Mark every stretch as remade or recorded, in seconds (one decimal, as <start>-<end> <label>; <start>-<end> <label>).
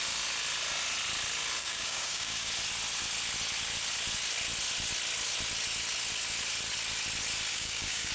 0.0-1.6 recorded; 1.6-2.5 remade; 2.5-7.5 recorded; 7.5-8.1 remade